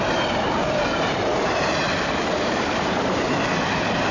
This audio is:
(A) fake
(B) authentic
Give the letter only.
A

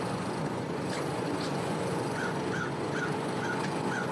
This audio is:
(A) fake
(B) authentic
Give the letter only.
A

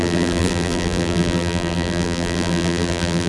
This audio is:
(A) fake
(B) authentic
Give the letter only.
A